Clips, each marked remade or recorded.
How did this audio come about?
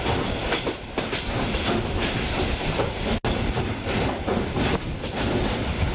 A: recorded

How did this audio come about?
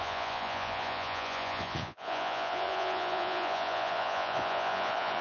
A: remade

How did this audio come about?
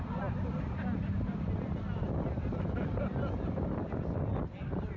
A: recorded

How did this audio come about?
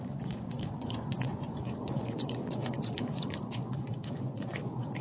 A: remade